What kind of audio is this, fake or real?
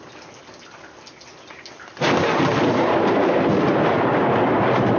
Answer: real